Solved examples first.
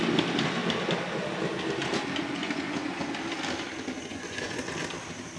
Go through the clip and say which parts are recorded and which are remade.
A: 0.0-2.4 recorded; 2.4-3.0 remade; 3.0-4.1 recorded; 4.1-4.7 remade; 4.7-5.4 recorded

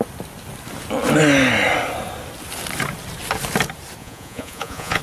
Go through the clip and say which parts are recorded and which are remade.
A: 0.0-4.0 recorded; 4.0-5.0 remade

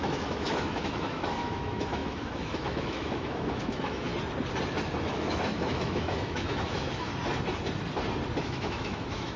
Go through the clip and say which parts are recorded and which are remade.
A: 0.0-4.1 remade; 4.1-5.0 recorded; 5.0-7.1 remade; 7.1-8.4 recorded; 8.4-9.4 remade

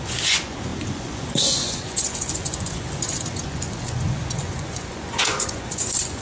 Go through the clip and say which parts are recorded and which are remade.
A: 0.0-6.2 remade

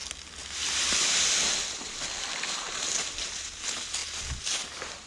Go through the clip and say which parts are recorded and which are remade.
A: 0.0-5.1 recorded

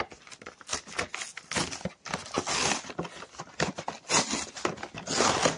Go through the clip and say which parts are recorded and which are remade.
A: 0.0-5.6 recorded

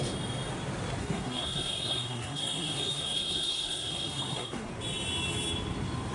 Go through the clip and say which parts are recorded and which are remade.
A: 0.0-1.0 recorded; 1.0-4.7 remade; 4.7-6.1 recorded

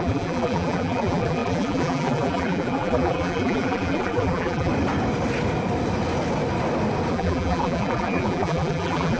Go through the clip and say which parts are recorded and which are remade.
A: 0.0-4.7 remade; 4.7-7.1 recorded; 7.1-9.2 remade